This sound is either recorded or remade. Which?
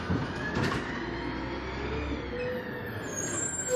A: recorded